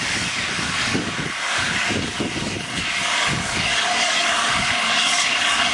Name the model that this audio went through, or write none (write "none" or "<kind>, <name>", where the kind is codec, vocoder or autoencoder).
codec, DAC